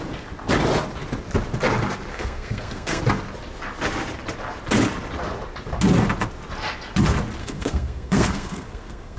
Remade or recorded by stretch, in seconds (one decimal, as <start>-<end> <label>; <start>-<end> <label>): 0.0-2.1 recorded; 2.1-3.0 remade; 3.0-7.4 recorded; 7.4-9.2 remade